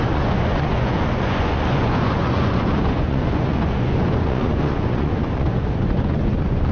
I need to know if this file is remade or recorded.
remade